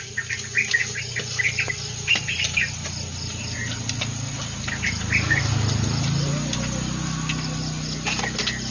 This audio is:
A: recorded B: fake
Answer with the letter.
A